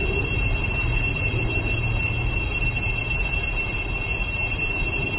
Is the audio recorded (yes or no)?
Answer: yes